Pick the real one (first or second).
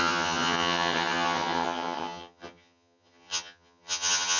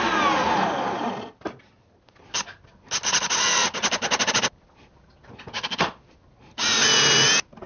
second